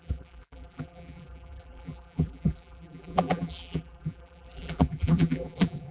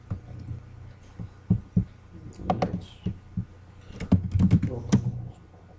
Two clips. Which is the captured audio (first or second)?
second